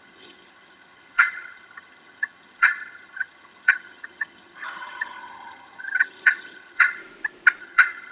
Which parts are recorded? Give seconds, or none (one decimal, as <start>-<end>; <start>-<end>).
7.0-7.6